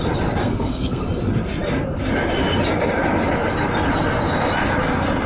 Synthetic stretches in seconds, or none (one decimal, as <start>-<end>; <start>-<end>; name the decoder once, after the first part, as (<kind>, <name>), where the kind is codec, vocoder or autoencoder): 0.4-1.0 (codec, SNAC)